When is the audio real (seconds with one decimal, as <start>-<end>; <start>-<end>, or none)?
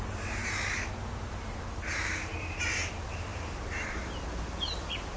0.0-3.3